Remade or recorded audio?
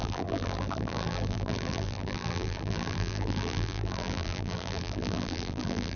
remade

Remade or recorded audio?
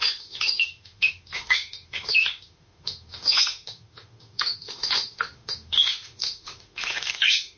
remade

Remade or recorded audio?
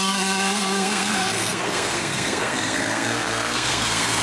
remade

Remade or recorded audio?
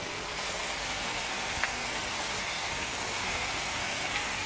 remade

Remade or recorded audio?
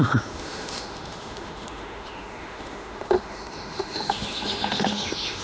remade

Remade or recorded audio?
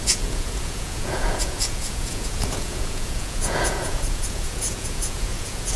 remade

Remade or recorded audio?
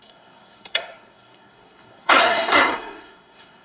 remade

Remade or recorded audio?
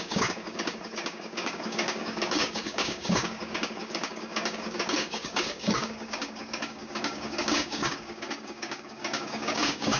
remade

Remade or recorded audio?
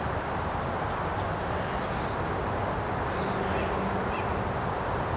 recorded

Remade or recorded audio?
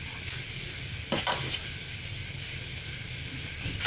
remade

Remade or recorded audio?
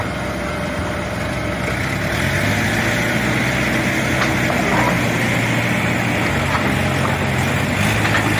recorded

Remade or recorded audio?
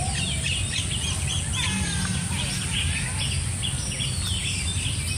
recorded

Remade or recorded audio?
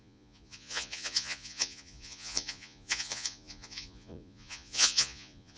remade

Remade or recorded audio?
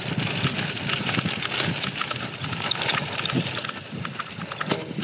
recorded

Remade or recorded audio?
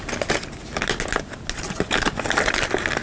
recorded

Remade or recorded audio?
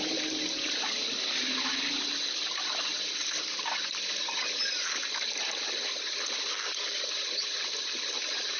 recorded